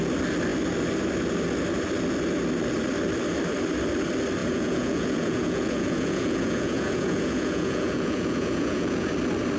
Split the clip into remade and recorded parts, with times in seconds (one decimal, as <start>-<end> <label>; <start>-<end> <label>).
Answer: 0.0-4.4 recorded; 4.4-9.1 remade; 9.1-9.6 recorded